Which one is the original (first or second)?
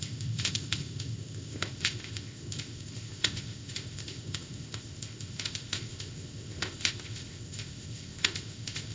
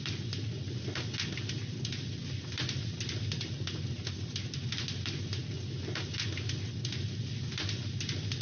second